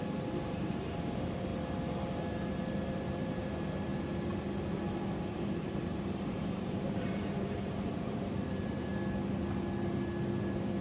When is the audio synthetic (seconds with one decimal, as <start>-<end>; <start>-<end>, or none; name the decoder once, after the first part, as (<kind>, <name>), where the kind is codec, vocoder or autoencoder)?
0.0-3.9 (vocoder, BigVGAN v2); 5.3-8.9; 10.4-10.8